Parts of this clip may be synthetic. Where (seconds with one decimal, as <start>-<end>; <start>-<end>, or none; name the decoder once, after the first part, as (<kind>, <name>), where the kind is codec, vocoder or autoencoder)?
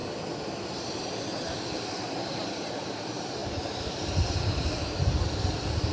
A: 0.0-5.9 (vocoder, BigVGAN v2)